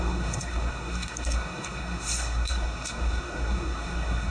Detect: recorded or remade remade